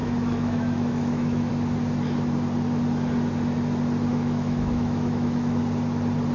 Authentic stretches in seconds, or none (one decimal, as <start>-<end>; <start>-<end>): 1.5-4.1; 5.6-6.3